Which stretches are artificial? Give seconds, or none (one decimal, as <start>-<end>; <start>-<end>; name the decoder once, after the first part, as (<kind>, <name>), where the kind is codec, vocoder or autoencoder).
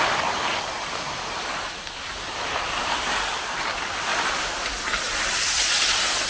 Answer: 4.1-4.8 (vocoder, BigVGAN v2)